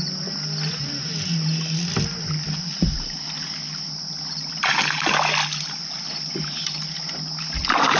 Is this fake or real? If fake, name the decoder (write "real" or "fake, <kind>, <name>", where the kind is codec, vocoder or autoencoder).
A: real